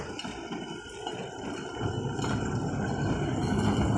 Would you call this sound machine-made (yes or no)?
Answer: no